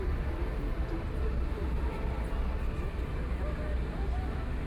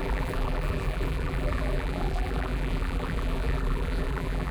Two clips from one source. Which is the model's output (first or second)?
second